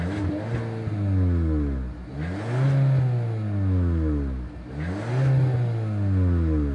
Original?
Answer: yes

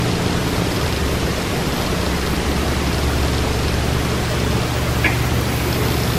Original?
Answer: yes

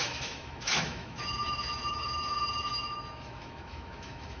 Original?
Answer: no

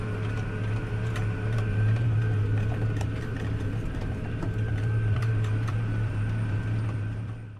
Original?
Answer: no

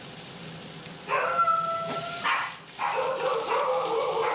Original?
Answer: yes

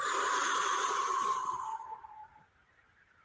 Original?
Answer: no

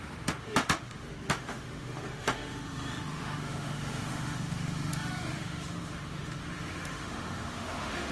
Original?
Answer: no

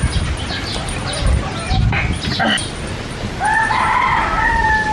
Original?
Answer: yes